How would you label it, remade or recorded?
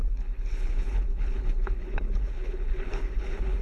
remade